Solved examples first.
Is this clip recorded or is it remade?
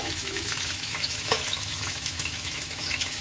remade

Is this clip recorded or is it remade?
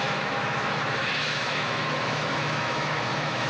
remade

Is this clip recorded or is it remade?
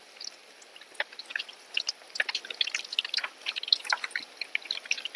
recorded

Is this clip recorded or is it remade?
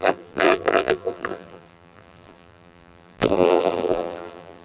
remade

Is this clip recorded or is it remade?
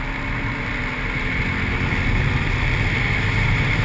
recorded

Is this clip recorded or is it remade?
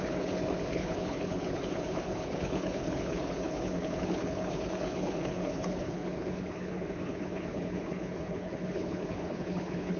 remade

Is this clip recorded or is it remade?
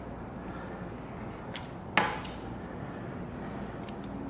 recorded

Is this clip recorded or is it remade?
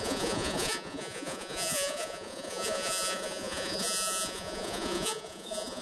remade